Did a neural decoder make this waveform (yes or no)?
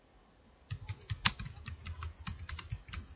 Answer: no